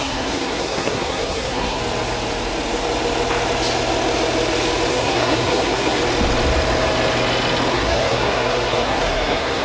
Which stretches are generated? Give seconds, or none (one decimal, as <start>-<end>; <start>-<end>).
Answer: 0.0-1.8; 4.9-6.0; 7.7-9.6